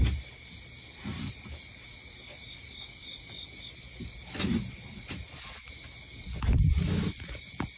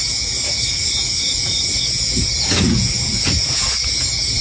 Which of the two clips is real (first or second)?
first